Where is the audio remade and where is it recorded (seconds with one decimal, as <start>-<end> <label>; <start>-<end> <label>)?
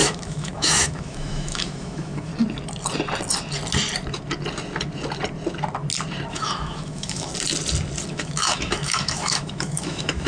0.0-2.3 remade; 2.3-6.3 recorded; 6.3-7.3 remade; 7.3-8.1 recorded; 8.1-10.3 remade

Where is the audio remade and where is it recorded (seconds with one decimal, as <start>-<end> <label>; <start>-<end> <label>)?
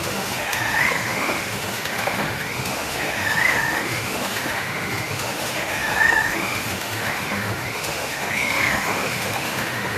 0.0-10.0 remade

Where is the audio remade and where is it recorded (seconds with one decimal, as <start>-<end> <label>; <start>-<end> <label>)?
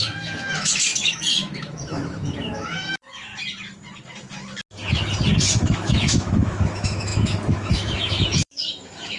0.0-3.3 remade; 3.3-5.6 recorded; 5.6-9.2 remade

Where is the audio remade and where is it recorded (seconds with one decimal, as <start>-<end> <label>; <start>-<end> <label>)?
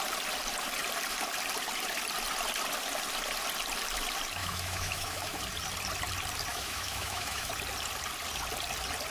0.0-4.4 recorded; 4.4-5.4 remade; 5.4-6.5 recorded; 6.5-7.5 remade; 7.5-9.1 recorded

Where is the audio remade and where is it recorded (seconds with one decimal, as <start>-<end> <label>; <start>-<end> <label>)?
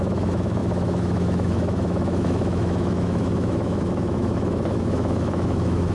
0.0-5.9 remade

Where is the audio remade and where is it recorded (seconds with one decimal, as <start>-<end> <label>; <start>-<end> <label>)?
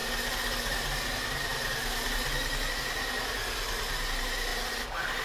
0.0-5.2 recorded